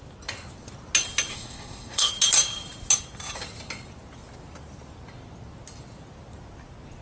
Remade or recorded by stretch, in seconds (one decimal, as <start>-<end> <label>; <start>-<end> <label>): 0.0-1.3 recorded; 1.3-2.1 remade; 2.1-7.0 recorded